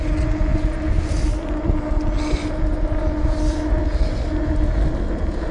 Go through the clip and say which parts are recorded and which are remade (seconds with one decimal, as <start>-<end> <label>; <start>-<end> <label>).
0.0-5.5 recorded